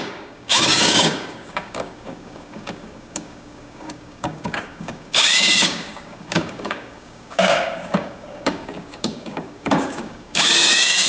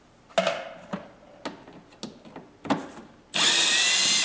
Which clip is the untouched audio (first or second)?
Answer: second